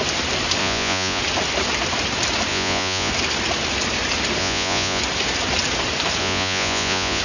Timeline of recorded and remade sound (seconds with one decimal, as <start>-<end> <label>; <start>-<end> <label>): 0.0-0.6 recorded; 0.6-1.2 remade; 1.2-2.5 recorded; 2.5-3.1 remade; 3.1-4.4 recorded; 4.4-5.0 remade; 5.0-6.2 recorded; 6.2-7.2 remade